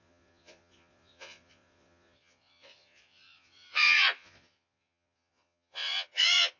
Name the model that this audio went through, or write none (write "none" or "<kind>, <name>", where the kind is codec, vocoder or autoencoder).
vocoder, Vocos